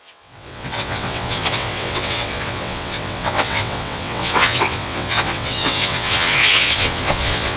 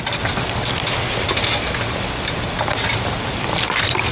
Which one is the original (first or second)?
second